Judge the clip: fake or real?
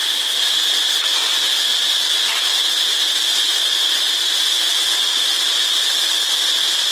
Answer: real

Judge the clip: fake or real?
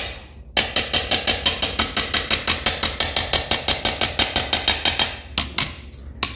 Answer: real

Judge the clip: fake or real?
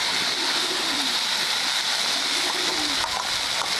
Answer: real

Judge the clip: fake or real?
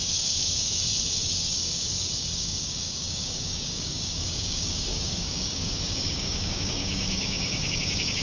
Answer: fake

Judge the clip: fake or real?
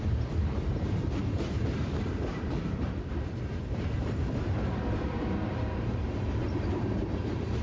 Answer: fake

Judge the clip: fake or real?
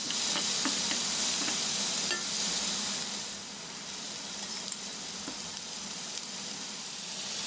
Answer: real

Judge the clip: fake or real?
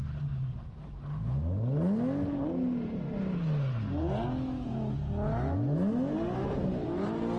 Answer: real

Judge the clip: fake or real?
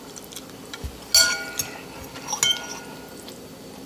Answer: real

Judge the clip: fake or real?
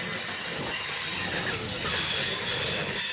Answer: real